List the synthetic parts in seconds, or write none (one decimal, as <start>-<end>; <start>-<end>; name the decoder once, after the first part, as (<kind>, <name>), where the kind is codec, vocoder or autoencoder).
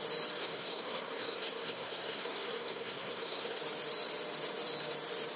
0.4-3.6 (codec, SNAC)